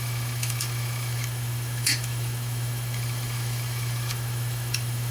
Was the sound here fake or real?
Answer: fake